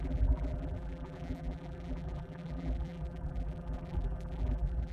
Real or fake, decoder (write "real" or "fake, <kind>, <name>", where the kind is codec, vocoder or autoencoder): fake, vocoder, BigVGAN v2